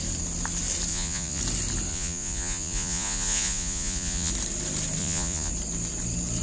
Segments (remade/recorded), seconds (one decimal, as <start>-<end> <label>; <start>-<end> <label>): 0.0-0.9 recorded; 0.9-1.4 remade; 1.4-1.9 recorded; 1.9-4.3 remade; 4.3-5.0 recorded; 5.0-5.5 remade; 5.5-6.4 recorded